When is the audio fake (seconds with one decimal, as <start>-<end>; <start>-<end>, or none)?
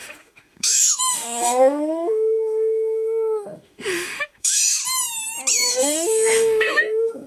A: 0.0-4.8; 5.5-7.3